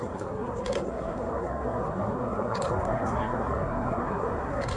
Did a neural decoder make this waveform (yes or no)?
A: yes